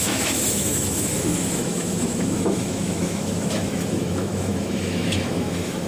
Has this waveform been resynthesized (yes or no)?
yes